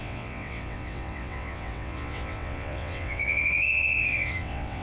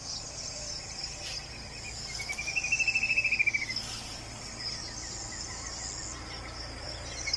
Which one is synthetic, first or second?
first